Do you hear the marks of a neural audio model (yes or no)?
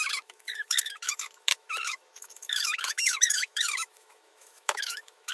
yes